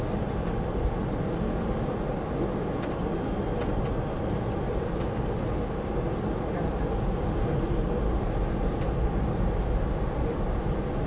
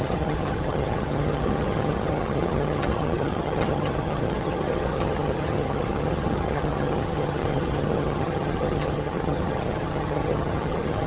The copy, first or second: second